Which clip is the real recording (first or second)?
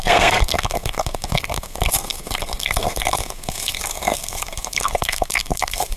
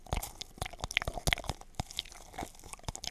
second